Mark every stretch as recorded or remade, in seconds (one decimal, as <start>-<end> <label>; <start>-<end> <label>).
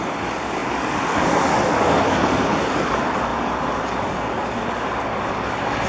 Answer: 0.0-5.9 remade